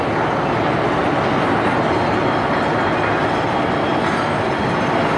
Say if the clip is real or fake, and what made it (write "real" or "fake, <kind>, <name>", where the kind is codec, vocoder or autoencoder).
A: real